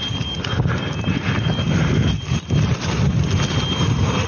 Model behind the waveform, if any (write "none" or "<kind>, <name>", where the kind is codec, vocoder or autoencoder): none